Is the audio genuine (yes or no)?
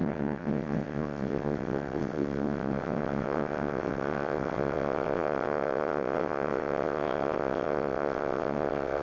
no